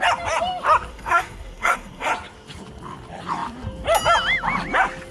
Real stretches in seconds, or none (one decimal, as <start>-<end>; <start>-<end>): 0.0-0.9; 2.1-5.1